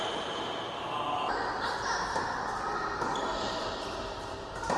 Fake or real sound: real